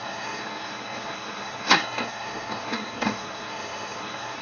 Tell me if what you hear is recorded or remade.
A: remade